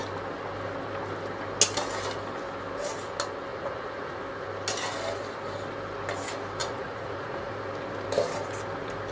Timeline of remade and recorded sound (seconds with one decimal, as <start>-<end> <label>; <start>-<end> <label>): 0.0-3.5 recorded; 3.5-4.2 remade; 4.2-6.6 recorded; 6.6-7.6 remade; 7.6-9.1 recorded